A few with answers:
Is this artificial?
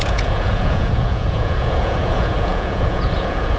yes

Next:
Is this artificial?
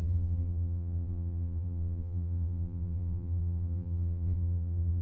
yes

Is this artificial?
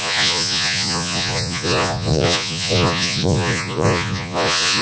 yes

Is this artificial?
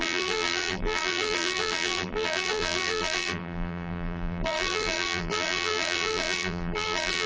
yes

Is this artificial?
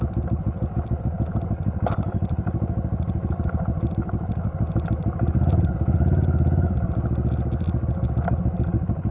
no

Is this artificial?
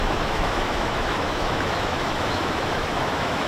yes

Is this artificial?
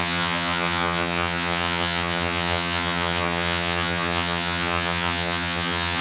yes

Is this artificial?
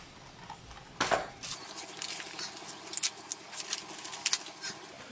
no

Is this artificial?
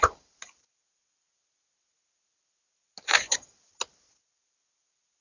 no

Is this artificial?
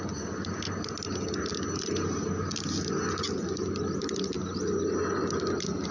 no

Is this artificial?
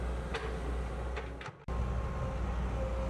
no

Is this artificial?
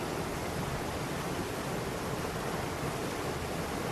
no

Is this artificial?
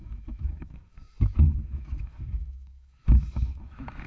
yes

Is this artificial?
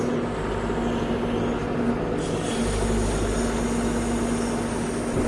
no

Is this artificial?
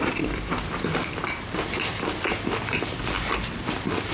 no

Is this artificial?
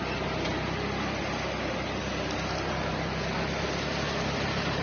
no